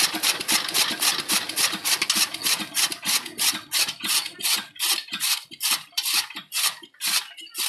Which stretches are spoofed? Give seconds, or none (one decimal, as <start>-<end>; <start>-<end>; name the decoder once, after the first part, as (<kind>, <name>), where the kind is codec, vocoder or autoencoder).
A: none